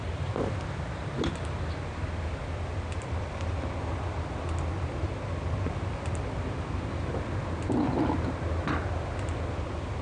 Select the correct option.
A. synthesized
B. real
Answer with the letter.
B